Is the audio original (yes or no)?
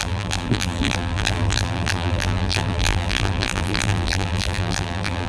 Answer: no